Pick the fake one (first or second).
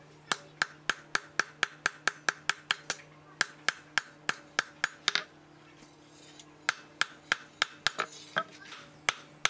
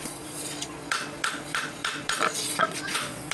second